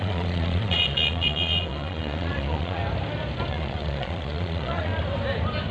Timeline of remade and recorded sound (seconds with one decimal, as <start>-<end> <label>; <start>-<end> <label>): 0.0-2.8 remade; 2.8-3.5 recorded; 3.5-4.9 remade; 4.9-5.7 recorded